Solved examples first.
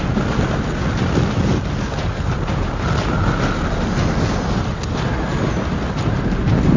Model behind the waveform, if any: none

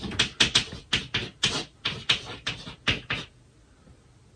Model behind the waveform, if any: none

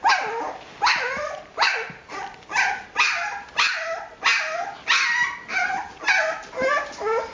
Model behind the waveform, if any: none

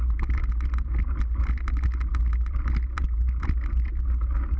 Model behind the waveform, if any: none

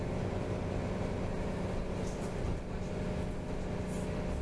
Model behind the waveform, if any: none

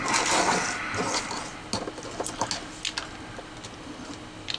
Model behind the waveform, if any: none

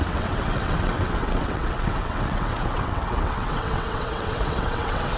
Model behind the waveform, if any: vocoder, WaveNeXt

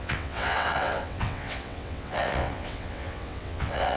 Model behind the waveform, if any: vocoder, WaveNeXt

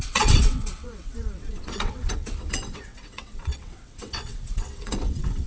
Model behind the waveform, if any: vocoder, WaveNeXt